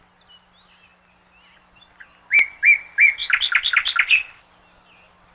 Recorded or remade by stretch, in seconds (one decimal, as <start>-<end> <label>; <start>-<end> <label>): 0.0-5.3 recorded